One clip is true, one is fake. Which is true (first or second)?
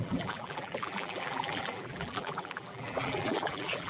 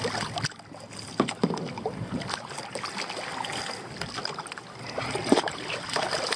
second